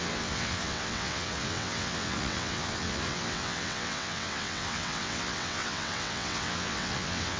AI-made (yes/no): yes